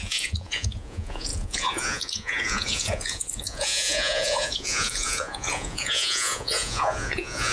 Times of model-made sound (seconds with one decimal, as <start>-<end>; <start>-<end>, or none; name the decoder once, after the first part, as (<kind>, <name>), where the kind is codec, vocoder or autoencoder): 0.0-7.5 (vocoder, Vocos)